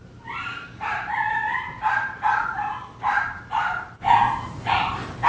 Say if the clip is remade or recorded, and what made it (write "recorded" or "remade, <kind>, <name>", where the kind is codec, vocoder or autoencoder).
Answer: remade, vocoder, BigVGAN v2